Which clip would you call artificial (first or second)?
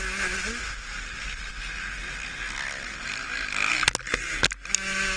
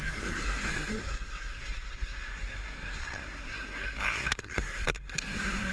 second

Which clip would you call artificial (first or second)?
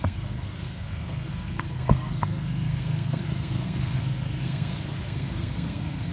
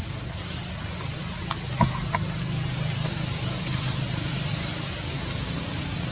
first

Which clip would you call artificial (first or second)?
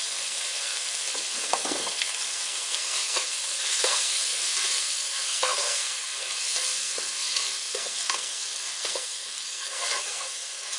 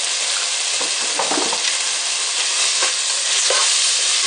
first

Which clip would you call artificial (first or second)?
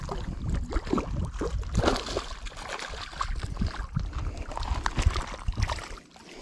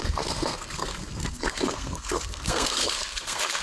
second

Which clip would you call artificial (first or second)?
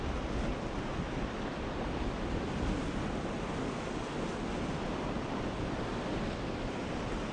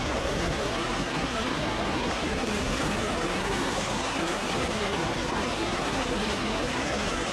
second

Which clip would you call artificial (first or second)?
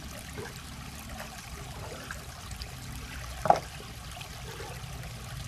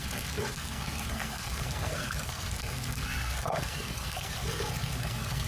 second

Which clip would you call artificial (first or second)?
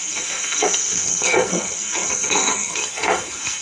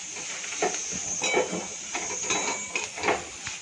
first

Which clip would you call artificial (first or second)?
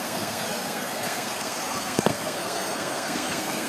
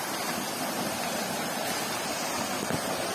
first